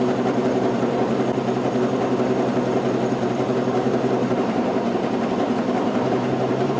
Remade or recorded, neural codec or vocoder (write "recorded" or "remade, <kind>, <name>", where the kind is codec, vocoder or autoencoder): remade, vocoder, BigVGAN v2